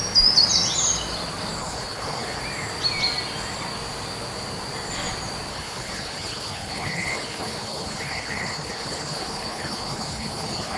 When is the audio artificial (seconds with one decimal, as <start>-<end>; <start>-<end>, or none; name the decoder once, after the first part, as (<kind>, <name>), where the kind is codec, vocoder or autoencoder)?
1.6-2.4 (codec, HILCodec); 5.5-10.8